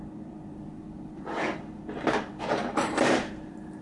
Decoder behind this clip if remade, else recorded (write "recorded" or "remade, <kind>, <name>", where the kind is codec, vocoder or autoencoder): remade, vocoder, BigVGAN v2